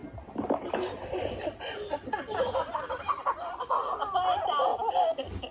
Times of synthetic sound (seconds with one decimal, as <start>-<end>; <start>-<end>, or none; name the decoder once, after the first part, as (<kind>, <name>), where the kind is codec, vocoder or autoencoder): 0.0-4.7 (vocoder, BigVGAN v2)